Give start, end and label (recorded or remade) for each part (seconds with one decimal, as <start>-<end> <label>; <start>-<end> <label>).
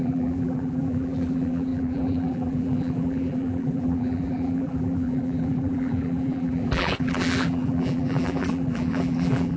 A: 0.0-9.6 remade